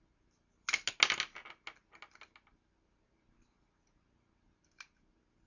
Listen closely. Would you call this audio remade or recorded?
recorded